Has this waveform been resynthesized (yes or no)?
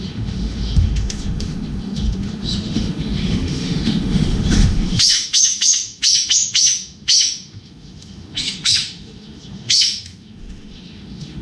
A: yes